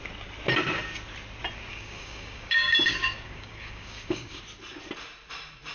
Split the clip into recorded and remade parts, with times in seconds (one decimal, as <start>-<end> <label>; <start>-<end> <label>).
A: 0.0-1.7 recorded; 1.7-4.4 remade; 4.4-5.7 recorded